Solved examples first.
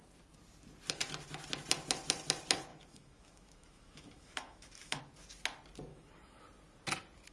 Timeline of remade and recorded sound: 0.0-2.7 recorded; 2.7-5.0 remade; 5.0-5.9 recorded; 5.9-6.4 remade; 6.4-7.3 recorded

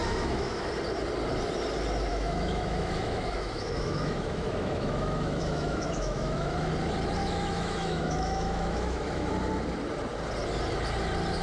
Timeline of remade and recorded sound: 0.0-0.7 remade; 0.7-2.1 recorded; 2.1-6.7 remade; 6.7-7.2 recorded; 7.2-9.3 remade; 9.3-11.4 recorded

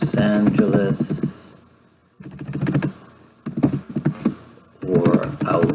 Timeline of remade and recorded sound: 0.0-5.7 recorded

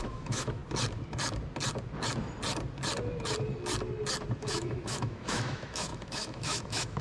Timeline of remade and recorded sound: 0.0-0.6 remade; 0.6-4.4 recorded; 4.4-7.0 remade

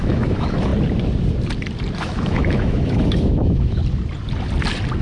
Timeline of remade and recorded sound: 0.0-0.7 remade; 0.7-2.0 recorded; 2.0-3.8 remade; 3.8-5.0 recorded

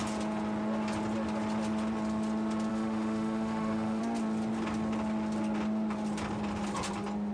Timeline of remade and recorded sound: 0.0-2.7 recorded; 2.7-4.0 remade; 4.0-7.3 recorded